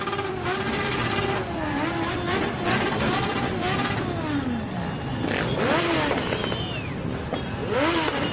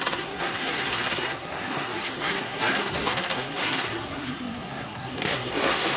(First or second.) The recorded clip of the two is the first